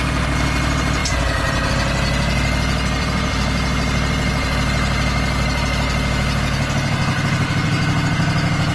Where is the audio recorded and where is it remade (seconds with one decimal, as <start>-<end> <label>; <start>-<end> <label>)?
0.0-8.7 recorded